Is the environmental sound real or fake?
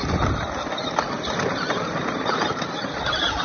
real